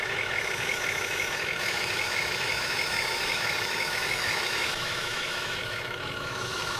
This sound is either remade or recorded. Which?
remade